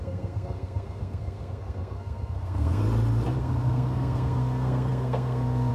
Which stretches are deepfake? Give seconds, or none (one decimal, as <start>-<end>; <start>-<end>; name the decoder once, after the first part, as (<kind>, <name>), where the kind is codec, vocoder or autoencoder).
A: 0.0-2.8 (codec, SNAC); 3.4-5.7